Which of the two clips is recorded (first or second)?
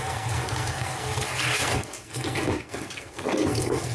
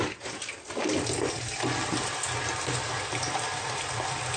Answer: second